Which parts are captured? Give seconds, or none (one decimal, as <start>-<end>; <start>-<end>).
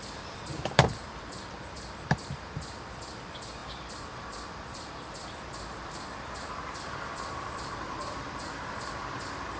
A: none